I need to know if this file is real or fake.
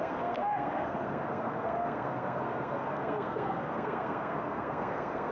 fake